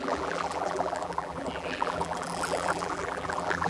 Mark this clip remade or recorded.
remade